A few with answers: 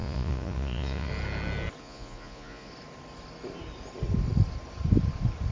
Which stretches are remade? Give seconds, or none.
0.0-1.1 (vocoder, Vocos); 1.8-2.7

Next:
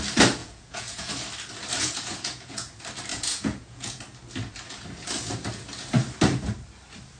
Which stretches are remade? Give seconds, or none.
0.4-1.1 (vocoder, Vocos); 1.8-2.7; 3.1-4.0

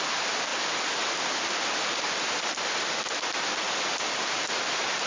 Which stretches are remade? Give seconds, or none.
none

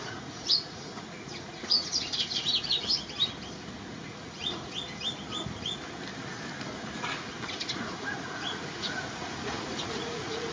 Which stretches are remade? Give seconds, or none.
0.0-2.9 (vocoder, Vocos); 3.9-4.7; 7.6-10.5